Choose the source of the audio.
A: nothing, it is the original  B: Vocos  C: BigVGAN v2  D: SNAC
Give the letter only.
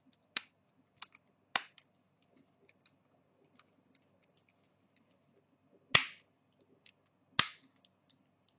A